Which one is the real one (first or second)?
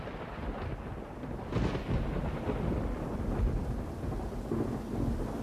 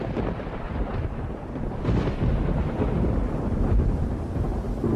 first